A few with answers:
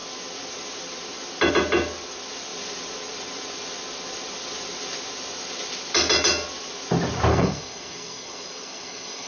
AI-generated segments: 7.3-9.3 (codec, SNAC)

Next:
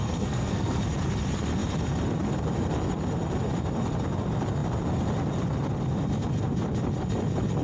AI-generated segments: 0.0-0.8 (codec, SNAC)

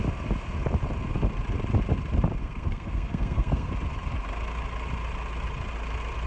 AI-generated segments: 2.4-3.7 (codec, SNAC)

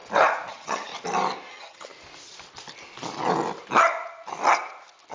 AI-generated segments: 0.5-0.9 (vocoder, HiFi-GAN); 1.5-1.9

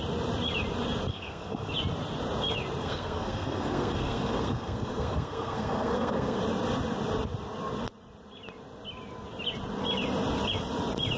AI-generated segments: 1.1-1.7 (codec, SNAC); 2.8-6.4